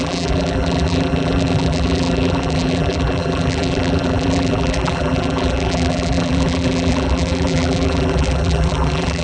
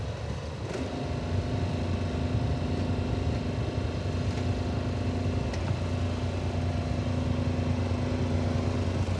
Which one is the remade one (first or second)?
first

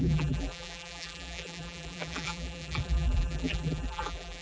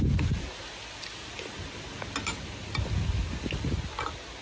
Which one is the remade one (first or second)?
first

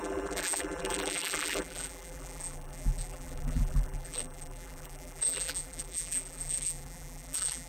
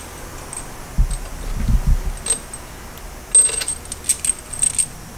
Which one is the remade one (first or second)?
first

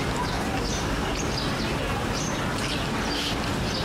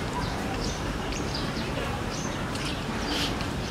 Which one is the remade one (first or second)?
second